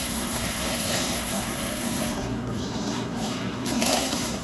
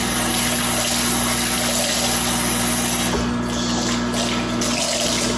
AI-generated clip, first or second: first